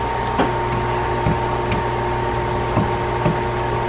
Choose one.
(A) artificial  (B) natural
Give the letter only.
B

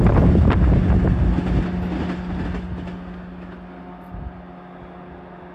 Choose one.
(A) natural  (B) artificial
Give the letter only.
A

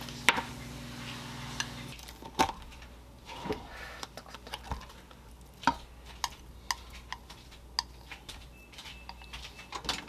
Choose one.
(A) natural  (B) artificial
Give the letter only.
A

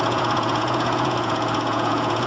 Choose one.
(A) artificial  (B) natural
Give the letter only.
A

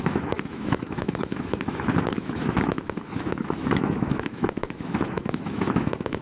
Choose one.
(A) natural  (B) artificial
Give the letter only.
B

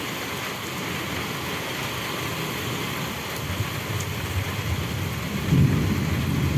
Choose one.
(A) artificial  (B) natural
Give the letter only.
B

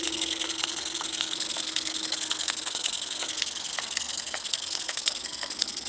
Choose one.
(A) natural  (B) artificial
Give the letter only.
B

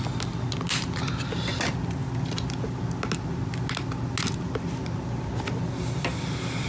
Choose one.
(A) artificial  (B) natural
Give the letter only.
B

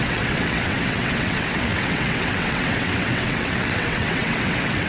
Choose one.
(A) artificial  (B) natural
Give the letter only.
A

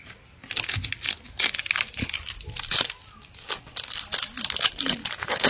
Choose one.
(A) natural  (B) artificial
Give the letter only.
A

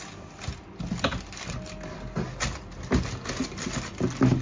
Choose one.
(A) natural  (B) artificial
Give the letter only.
A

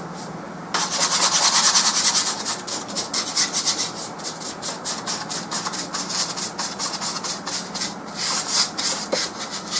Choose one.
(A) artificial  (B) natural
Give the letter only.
B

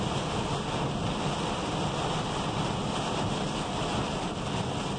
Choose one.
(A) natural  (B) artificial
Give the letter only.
A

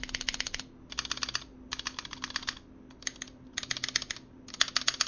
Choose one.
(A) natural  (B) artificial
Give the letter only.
A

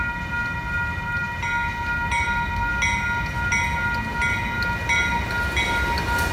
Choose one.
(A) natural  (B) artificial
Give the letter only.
A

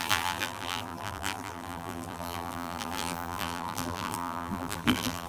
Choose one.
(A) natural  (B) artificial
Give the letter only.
B